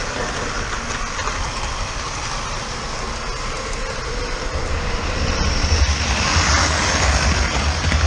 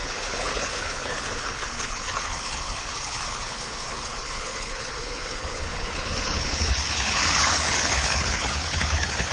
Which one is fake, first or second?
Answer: second